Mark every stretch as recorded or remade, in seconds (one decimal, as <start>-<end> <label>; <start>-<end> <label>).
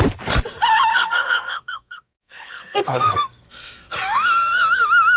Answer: 0.0-0.9 recorded; 0.9-3.9 remade; 3.9-5.2 recorded